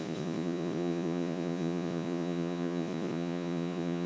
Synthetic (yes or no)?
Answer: yes